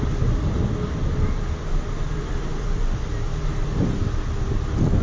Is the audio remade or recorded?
recorded